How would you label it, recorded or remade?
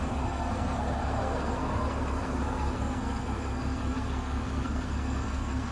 remade